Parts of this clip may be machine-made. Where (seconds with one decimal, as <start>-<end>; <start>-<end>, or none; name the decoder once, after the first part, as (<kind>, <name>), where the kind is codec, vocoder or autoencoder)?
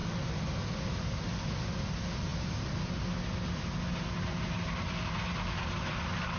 none